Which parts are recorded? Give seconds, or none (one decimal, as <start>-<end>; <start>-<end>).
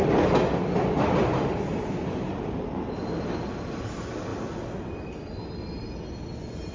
0.0-6.7